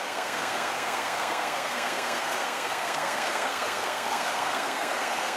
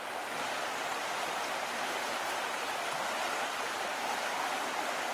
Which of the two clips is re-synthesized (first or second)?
first